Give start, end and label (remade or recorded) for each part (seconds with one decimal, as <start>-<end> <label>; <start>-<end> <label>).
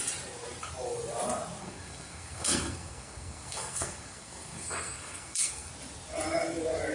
0.0-1.6 recorded; 1.6-5.7 remade; 5.7-6.9 recorded